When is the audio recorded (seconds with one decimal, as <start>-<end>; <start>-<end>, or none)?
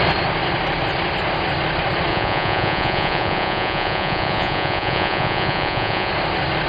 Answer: 0.0-2.1; 6.1-6.7